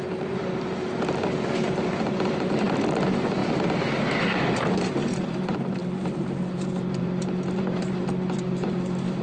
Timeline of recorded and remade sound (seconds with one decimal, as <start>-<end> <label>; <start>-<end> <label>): 0.0-3.4 remade; 3.4-4.0 recorded; 4.0-9.2 remade